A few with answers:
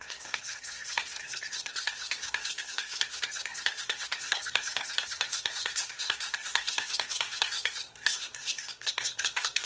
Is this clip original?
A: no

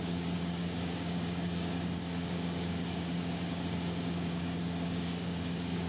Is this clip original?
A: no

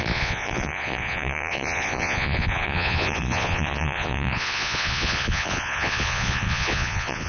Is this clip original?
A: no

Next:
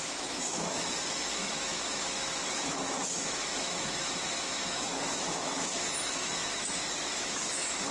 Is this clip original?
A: no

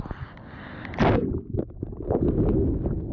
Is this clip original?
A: yes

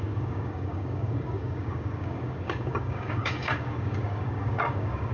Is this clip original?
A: no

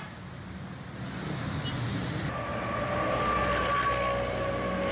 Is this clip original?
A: yes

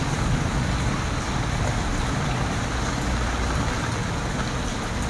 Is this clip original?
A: yes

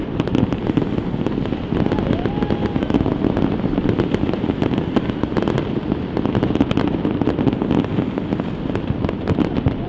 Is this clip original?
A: yes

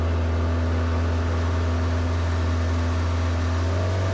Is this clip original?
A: yes